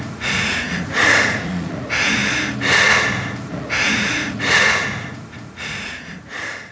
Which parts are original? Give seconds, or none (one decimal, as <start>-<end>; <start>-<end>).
2.2-3.5